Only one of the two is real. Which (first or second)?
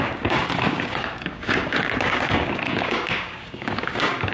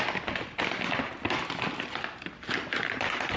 second